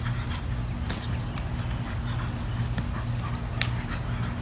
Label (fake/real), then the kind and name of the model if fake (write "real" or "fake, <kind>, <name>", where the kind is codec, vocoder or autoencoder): real